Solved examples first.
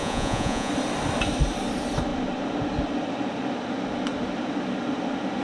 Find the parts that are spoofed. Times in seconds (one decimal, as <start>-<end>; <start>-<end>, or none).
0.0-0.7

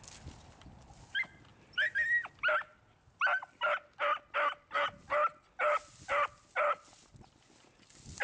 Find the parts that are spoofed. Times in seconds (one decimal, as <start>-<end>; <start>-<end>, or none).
none

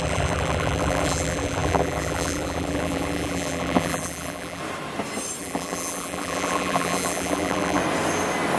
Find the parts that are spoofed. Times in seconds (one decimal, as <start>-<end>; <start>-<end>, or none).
0.0-4.6; 5.4-7.8

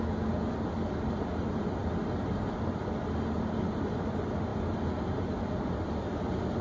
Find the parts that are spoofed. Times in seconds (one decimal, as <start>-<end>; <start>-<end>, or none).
none